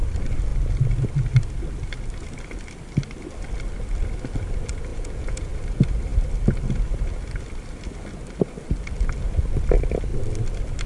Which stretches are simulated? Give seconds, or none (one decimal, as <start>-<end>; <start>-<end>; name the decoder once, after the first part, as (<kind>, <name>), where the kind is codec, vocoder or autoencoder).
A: 4.9-5.5 (vocoder, Vocos)